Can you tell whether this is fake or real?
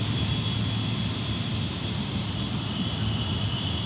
real